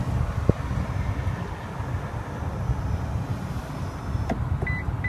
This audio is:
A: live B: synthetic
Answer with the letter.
A